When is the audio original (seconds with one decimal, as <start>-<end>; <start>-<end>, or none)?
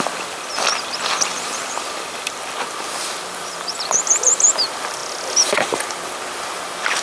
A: none